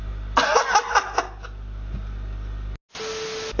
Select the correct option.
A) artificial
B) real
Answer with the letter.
B